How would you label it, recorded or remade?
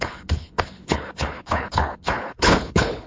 remade